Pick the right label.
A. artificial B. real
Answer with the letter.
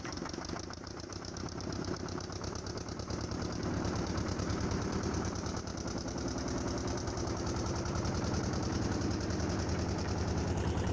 A